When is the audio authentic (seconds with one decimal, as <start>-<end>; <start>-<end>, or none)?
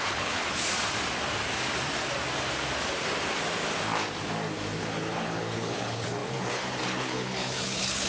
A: 0.7-4.8